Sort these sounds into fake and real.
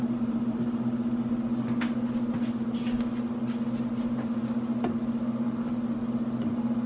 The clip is real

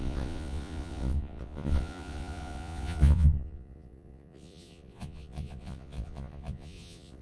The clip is fake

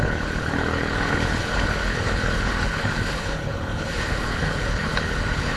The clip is fake